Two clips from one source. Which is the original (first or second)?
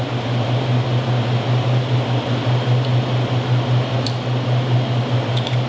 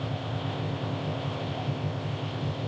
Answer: first